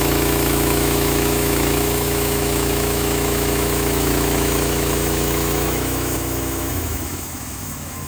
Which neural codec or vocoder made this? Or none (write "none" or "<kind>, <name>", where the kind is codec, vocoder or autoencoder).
autoencoder, DAC-VAE